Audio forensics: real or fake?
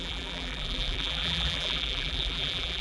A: fake